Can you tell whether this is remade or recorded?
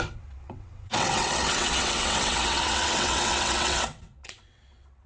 remade